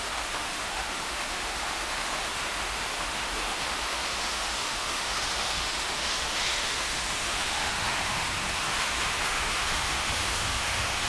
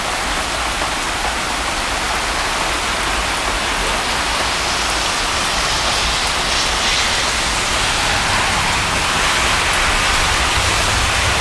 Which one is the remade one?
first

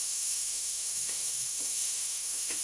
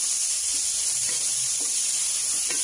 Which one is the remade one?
first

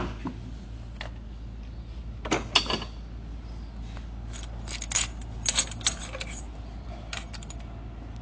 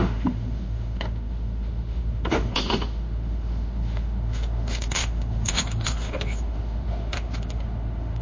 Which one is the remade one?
second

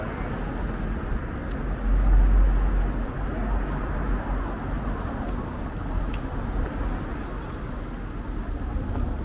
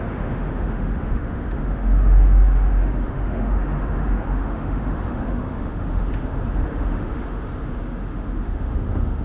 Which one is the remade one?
second